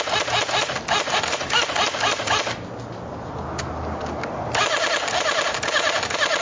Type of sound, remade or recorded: recorded